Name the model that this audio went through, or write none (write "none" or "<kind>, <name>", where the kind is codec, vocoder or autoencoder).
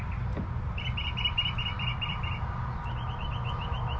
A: none